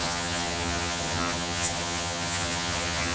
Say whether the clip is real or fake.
fake